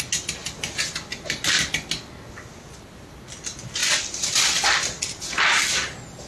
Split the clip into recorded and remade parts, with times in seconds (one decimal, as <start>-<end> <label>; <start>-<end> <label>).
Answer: 0.0-6.3 recorded